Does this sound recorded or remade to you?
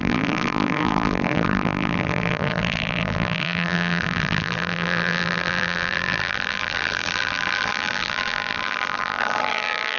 remade